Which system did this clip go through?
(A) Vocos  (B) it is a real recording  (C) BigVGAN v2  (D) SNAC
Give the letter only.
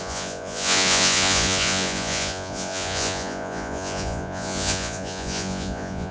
A